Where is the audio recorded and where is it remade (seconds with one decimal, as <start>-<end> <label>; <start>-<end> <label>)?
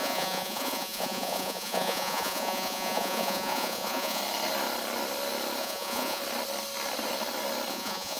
0.0-4.2 remade; 4.2-5.6 recorded; 5.6-6.2 remade; 6.2-7.7 recorded; 7.7-8.2 remade